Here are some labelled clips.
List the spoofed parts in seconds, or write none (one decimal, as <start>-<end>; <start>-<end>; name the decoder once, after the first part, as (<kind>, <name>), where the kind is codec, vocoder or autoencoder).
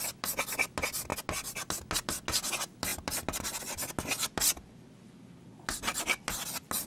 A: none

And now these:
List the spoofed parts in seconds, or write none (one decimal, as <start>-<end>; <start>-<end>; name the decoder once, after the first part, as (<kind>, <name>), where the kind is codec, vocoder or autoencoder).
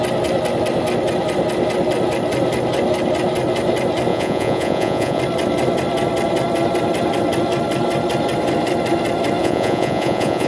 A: 4.1-5.2 (vocoder, Vocos); 9.4-10.5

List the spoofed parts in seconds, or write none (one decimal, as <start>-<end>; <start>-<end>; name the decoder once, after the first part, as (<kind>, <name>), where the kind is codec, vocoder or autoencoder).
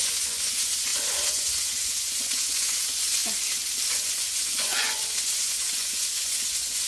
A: 0.0-3.2 (vocoder, Vocos); 3.9-6.9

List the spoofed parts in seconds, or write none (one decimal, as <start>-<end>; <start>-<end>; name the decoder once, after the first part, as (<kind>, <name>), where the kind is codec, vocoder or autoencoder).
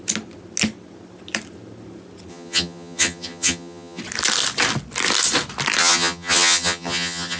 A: 2.3-4.0 (vocoder, HiFi-GAN); 5.8-7.4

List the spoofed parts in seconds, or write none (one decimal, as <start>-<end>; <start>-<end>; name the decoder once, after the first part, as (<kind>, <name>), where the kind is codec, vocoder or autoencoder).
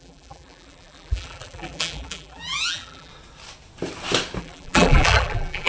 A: 0.0-3.1 (vocoder, BigVGAN v2); 4.4-5.7